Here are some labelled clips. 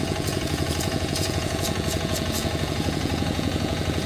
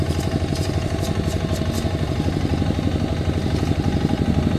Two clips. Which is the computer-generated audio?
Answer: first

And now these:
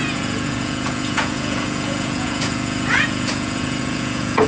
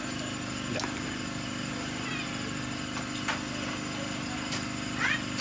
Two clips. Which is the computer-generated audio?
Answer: first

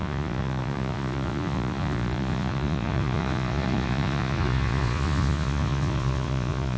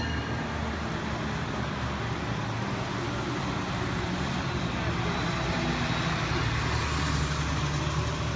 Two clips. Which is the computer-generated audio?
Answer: first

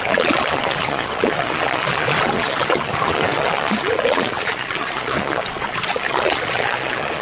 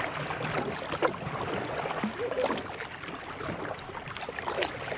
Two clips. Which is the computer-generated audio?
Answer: first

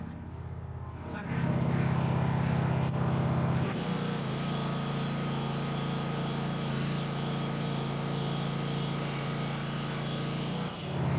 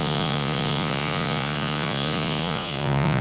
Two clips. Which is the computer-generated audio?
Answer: second